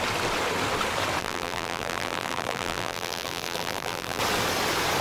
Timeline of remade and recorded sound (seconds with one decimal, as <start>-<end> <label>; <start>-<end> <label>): 0.0-1.2 recorded; 1.2-4.2 remade; 4.2-5.0 recorded